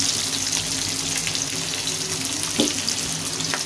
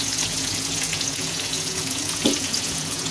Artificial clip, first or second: second